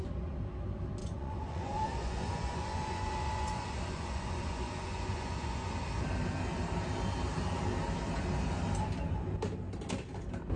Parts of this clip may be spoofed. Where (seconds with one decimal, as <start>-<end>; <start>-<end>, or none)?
1.0-5.9